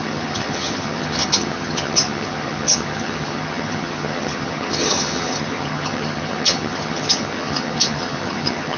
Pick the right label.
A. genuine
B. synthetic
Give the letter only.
B